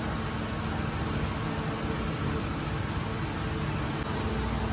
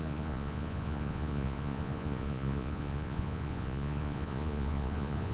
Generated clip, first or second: second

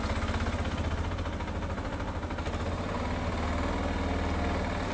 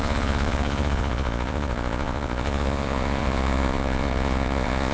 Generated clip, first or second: second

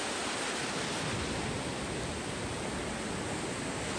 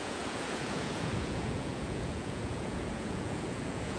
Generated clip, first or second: second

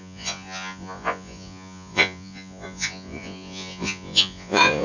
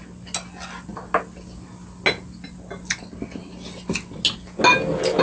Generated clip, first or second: first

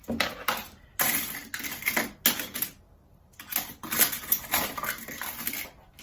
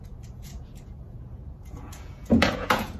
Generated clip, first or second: second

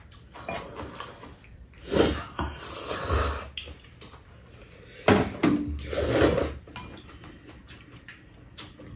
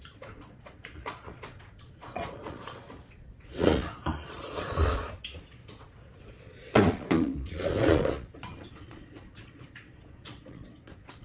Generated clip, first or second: second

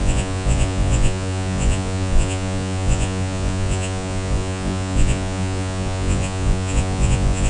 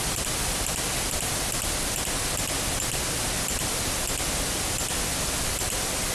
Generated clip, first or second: first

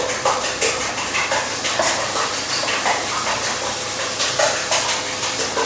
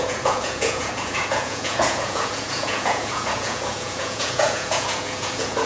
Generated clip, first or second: second